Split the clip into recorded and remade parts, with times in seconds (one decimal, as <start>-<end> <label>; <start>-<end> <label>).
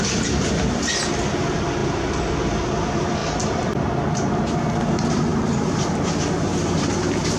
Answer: 0.0-3.2 recorded; 3.2-4.1 remade; 4.1-5.3 recorded; 5.3-6.1 remade; 6.1-7.4 recorded